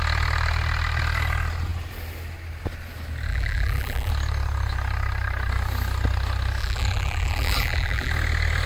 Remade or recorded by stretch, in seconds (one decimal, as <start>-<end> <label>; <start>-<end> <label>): 0.0-3.3 recorded; 3.3-4.1 remade; 4.1-6.6 recorded; 6.6-8.1 remade; 8.1-8.7 recorded

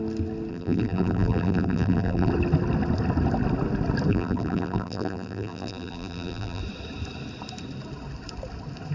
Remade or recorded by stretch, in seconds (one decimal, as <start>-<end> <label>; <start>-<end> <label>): 0.0-0.5 recorded; 0.5-2.3 remade; 2.3-4.1 recorded; 4.1-6.6 remade; 6.6-8.9 recorded

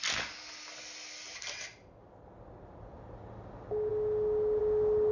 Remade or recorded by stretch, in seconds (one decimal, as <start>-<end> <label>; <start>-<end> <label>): 0.0-5.1 recorded

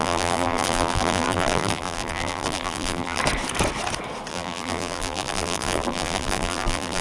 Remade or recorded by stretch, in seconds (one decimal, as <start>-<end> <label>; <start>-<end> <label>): 0.0-3.2 remade; 3.2-4.3 recorded; 4.3-7.0 remade